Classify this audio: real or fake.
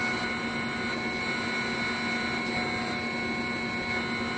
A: real